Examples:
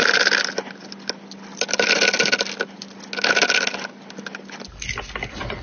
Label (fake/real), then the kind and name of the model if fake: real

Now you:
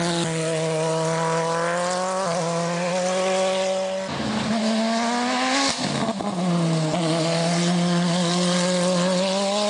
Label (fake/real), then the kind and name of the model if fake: real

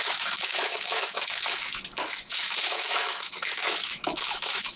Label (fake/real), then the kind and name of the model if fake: fake, autoencoder, DAC-VAE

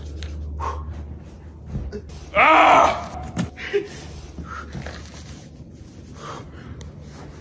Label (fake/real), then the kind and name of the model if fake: real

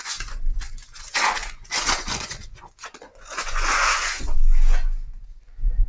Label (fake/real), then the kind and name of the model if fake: fake, vocoder, Vocos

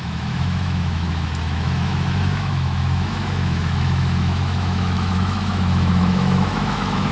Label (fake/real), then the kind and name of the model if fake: fake, autoencoder, DAC-VAE